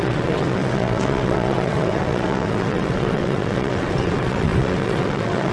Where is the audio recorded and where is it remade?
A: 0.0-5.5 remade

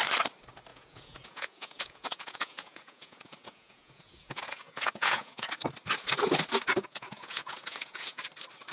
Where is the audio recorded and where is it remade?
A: 0.0-0.7 recorded; 0.7-5.5 remade; 5.5-6.8 recorded; 6.8-8.2 remade; 8.2-8.7 recorded

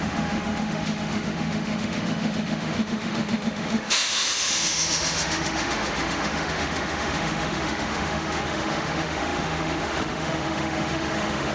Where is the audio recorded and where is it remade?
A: 0.0-11.5 remade

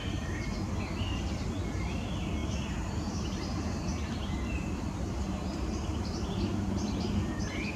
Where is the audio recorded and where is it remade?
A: 0.0-2.4 recorded; 2.4-7.0 remade; 7.0-7.8 recorded

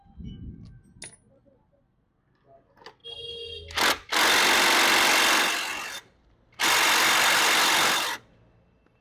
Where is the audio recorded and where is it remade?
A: 0.0-9.0 recorded

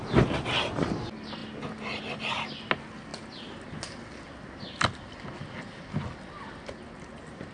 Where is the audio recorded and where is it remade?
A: 0.0-7.5 recorded

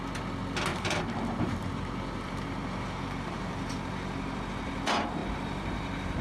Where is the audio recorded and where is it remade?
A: 0.0-0.7 recorded; 0.7-4.4 remade; 4.4-5.2 recorded; 5.2-6.2 remade

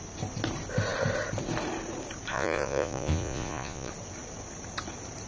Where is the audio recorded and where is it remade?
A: 0.0-2.3 recorded; 2.3-3.9 remade; 3.9-5.3 recorded